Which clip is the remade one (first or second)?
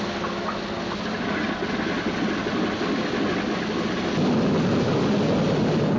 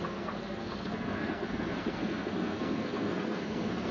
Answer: second